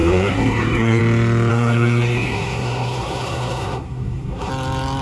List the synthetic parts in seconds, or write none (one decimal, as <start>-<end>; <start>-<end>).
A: 0.0-1.0; 1.5-4.5